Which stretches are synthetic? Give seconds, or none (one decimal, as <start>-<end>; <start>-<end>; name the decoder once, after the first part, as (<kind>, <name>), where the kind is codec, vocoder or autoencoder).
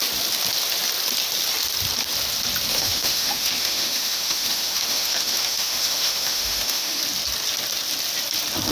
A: 2.7-7.0 (autoencoder, DAC-VAE)